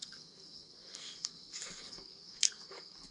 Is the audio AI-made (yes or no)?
yes